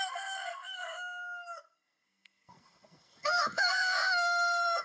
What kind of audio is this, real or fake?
fake